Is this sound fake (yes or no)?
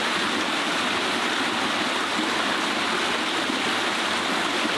no